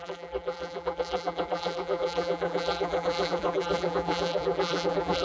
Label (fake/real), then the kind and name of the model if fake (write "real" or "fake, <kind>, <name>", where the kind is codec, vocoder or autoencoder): fake, vocoder, BigVGAN v2